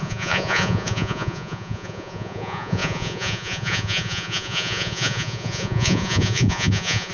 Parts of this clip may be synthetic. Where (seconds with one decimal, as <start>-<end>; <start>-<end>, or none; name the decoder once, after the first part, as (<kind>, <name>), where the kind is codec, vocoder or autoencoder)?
0.0-7.1 (vocoder, Vocos)